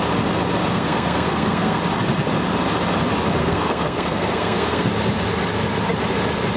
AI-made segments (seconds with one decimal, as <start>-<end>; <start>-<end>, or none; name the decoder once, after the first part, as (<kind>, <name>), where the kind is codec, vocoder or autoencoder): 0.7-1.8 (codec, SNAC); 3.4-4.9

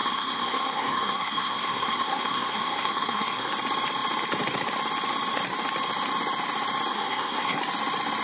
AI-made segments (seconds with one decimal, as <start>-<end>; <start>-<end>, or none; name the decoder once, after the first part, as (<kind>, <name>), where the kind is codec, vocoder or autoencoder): 0.0-3.5 (codec, SNAC); 6.9-7.6

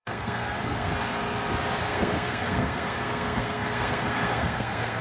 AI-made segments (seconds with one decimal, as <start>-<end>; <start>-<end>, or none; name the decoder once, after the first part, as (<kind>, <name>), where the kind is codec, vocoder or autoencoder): 0.0-0.9 (codec, SNAC); 1.8-5.0

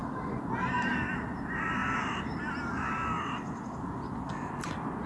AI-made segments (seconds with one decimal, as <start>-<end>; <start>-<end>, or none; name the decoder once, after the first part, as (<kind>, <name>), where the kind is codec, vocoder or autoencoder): none

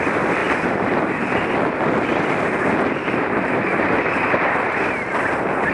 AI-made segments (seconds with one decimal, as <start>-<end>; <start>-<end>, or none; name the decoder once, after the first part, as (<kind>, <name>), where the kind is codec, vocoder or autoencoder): none

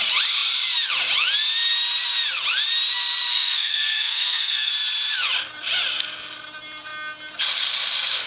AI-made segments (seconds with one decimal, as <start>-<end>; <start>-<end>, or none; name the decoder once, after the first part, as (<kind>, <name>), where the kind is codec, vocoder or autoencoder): 3.3-4.7 (codec, SNAC)

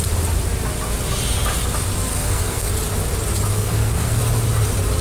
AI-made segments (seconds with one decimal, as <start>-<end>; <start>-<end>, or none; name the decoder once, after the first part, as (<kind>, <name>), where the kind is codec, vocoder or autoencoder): 2.1-2.7 (codec, SNAC); 3.5-4.2

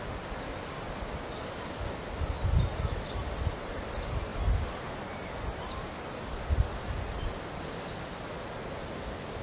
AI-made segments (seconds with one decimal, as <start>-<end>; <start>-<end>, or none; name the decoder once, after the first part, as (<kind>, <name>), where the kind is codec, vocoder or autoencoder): none